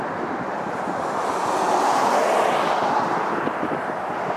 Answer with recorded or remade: recorded